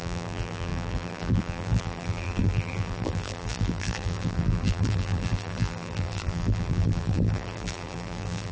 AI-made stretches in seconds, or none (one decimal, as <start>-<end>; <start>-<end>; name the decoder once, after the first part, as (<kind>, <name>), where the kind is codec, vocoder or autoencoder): 0.0-8.5 (vocoder, BigVGAN v2)